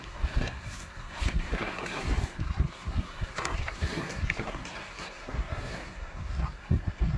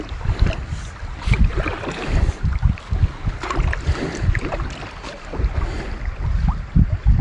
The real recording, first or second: second